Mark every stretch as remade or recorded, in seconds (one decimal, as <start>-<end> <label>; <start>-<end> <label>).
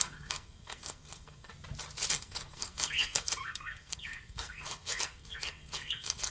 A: 0.0-1.5 remade; 1.5-2.1 recorded; 2.1-6.3 remade